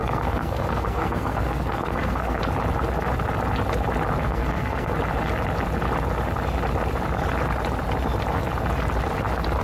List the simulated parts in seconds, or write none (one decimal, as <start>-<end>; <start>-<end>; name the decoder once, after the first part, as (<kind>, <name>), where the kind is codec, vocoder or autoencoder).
0.0-2.4 (codec, SNAC); 4.2-4.9